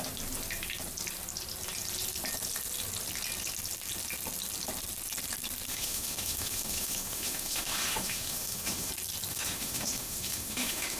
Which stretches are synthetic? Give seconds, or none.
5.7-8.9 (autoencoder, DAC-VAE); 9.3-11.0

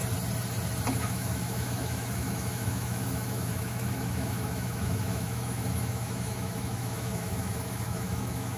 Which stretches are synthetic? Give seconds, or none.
0.9-8.6 (autoencoder, DAC-VAE)

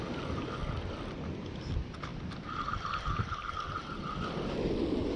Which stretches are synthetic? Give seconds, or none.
0.0-2.1 (vocoder, BigVGAN v2); 4.0-5.2